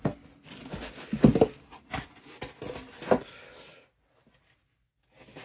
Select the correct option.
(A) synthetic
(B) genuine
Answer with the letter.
B